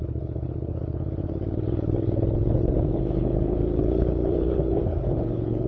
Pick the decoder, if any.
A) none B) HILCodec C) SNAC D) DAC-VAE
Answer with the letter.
B